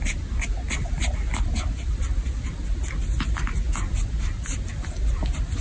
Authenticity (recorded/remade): recorded